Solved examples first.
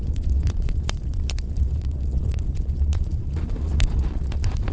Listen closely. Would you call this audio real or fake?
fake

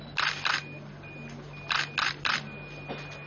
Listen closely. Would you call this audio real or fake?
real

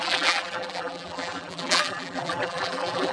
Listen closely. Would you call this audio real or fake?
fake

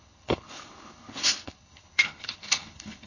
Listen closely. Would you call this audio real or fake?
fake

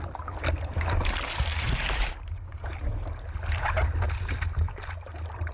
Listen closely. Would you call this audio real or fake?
real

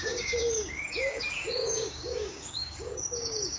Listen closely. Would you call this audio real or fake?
fake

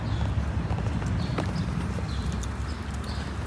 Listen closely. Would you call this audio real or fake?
real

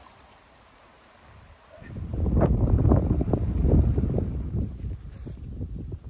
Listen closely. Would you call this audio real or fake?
real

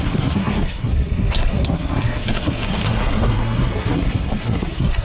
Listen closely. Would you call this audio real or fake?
fake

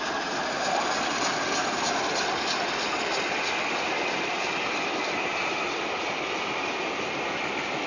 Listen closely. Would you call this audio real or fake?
real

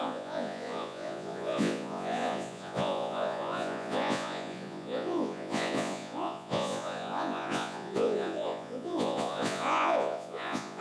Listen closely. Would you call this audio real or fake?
fake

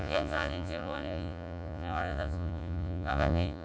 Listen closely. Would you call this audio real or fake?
fake